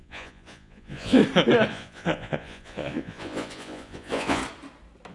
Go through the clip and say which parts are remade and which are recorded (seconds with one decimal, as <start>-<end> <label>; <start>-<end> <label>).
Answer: 0.0-1.2 remade; 1.2-1.7 recorded; 1.7-4.4 remade; 4.4-5.1 recorded